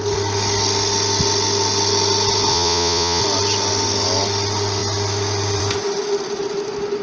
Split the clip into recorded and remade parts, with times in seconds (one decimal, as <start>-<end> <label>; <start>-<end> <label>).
0.0-2.5 recorded; 2.5-3.2 remade; 3.2-7.0 recorded

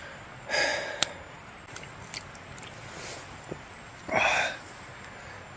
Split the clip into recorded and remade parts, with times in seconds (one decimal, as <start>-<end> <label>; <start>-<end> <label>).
0.0-5.6 recorded

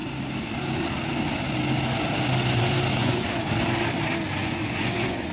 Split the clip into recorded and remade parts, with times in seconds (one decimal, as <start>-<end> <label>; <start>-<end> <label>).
0.0-3.0 recorded; 3.0-3.5 remade; 3.5-4.4 recorded; 4.4-5.3 remade

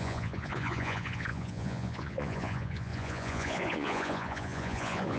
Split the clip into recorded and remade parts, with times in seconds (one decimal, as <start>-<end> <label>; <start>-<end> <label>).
0.0-5.2 remade

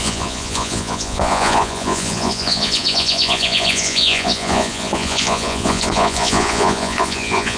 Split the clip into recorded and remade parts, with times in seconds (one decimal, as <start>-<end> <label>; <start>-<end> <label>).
0.0-7.6 remade

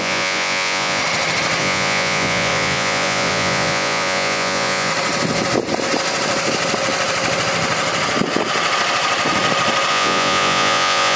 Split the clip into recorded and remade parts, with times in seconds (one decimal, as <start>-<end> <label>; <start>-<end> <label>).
0.0-1.0 remade; 1.0-1.6 recorded; 1.6-4.9 remade; 4.9-9.9 recorded; 9.9-11.2 remade